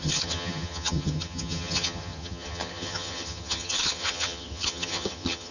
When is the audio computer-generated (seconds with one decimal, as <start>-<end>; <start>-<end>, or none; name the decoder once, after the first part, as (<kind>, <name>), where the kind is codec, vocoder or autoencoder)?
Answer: 0.0-5.5 (vocoder, HiFi-GAN)